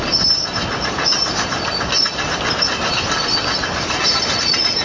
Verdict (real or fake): real